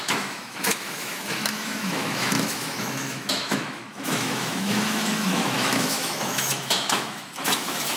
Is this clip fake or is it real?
fake